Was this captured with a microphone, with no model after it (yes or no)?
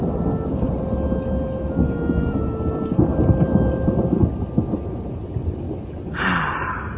yes